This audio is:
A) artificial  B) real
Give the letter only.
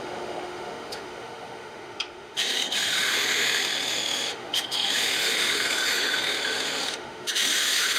A